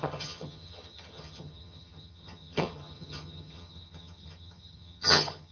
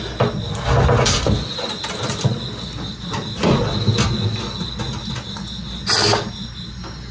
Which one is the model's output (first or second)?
first